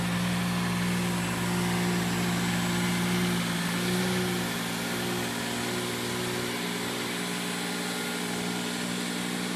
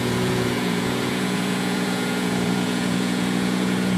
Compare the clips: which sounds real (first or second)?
first